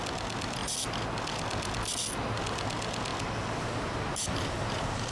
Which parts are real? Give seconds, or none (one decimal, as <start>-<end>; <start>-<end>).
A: 0.0-5.1